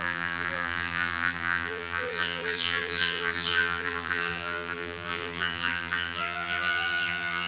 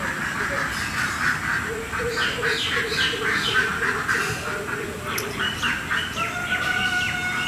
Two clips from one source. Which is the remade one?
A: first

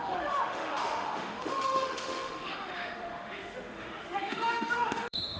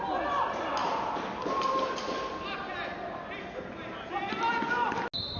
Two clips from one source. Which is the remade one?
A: first